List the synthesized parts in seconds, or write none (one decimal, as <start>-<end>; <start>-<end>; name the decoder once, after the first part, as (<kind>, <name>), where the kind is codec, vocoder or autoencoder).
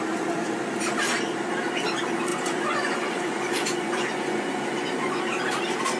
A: 2.3-5.2 (vocoder, Vocos)